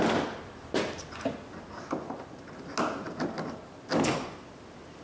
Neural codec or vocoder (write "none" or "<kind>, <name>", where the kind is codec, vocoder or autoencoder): none